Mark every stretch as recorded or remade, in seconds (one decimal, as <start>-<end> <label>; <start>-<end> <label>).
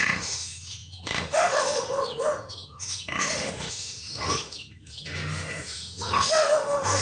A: 0.0-7.0 remade